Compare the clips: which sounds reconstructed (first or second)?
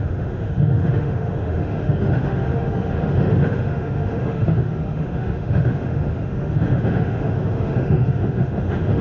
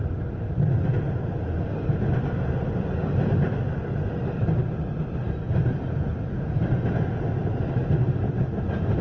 first